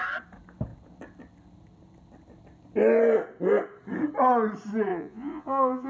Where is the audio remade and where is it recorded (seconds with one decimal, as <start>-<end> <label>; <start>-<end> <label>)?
0.0-4.9 recorded; 4.9-5.9 remade